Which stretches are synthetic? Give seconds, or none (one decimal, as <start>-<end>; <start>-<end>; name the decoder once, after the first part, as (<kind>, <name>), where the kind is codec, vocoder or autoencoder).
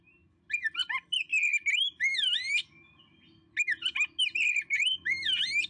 none